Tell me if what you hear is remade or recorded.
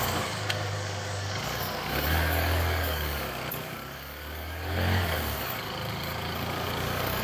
remade